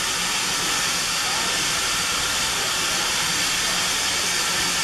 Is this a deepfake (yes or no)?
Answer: no